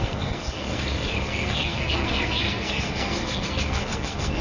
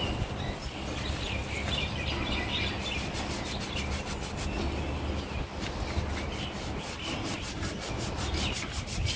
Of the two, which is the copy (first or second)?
first